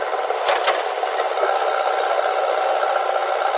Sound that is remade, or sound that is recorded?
recorded